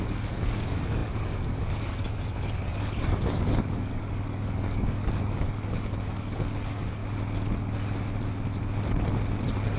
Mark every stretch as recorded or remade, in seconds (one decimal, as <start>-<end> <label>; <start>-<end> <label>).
0.0-7.0 remade; 7.0-9.8 recorded